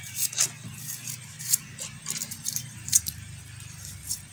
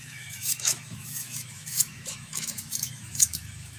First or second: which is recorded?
first